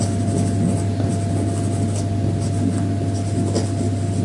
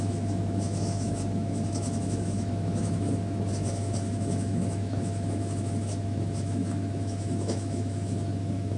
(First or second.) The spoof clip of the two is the second